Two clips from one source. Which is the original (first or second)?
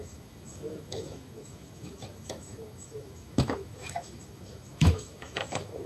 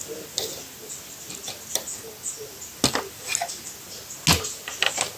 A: second